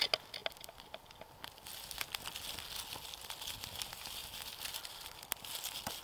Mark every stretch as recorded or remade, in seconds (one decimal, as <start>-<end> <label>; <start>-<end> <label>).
0.0-6.0 recorded